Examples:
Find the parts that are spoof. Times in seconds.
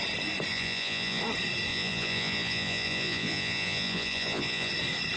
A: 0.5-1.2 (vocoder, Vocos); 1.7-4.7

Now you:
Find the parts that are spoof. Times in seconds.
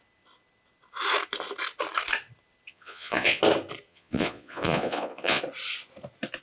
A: 2.7-3.4 (vocoder, Vocos); 3.9-5.4